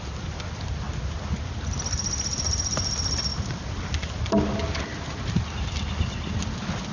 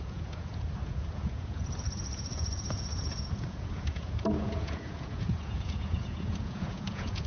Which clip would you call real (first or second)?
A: first